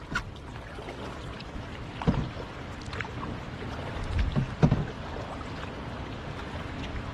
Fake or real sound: real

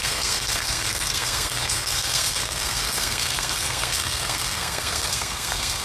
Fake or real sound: fake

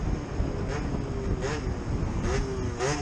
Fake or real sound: real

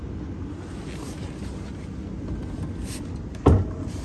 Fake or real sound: real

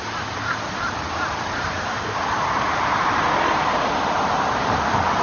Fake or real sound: fake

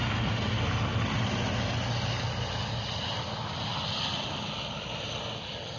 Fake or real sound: real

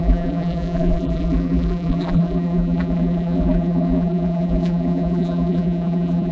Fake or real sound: fake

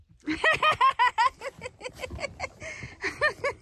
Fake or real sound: real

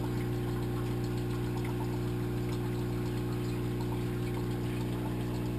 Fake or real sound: real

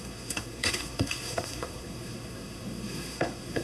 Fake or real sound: fake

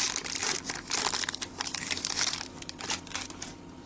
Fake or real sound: real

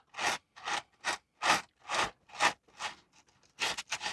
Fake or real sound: real